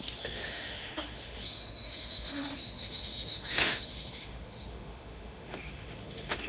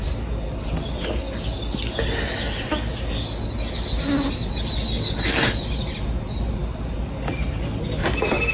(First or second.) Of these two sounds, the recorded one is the second